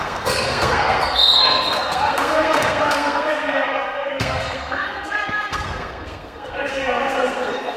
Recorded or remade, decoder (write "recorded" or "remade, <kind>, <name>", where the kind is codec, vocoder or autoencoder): remade, codec, SNAC